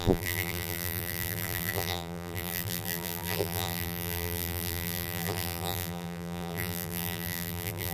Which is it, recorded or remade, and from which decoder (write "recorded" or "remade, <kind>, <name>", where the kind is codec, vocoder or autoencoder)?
remade, vocoder, BigVGAN v2